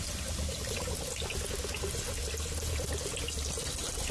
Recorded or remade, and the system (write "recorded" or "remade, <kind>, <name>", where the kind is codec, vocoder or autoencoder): recorded